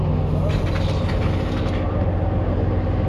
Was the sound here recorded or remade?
recorded